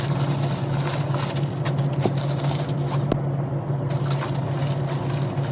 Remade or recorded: recorded